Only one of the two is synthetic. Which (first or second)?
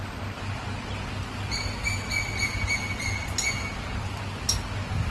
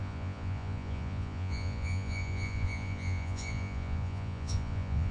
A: second